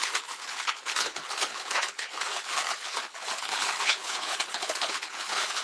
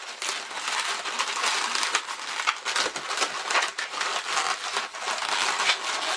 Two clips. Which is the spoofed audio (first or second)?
first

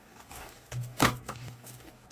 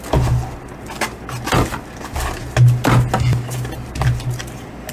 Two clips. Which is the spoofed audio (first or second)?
first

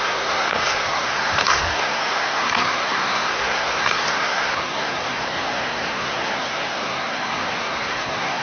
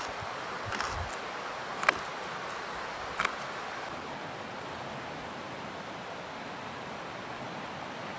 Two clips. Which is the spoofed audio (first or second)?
first